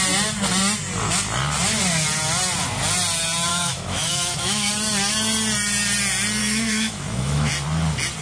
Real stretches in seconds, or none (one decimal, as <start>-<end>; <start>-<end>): 0.0-3.5; 4.7-6.4; 7.5-8.2